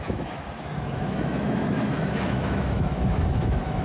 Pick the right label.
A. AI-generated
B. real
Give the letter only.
A